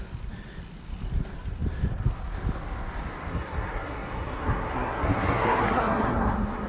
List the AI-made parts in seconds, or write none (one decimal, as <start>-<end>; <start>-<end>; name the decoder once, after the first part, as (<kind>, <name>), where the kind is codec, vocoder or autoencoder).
3.3-6.7 (codec, SNAC)